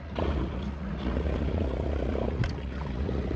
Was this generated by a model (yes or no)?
yes